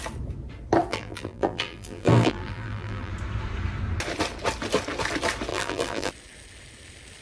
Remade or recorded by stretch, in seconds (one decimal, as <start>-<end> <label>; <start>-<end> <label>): 0.0-0.9 recorded; 0.9-3.1 remade; 3.1-5.5 recorded; 5.5-6.1 remade; 6.1-7.2 recorded